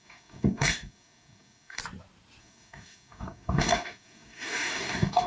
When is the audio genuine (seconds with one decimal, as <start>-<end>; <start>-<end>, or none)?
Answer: 1.8-2.4